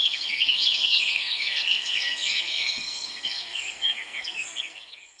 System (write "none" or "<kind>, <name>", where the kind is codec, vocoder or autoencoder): codec, SNAC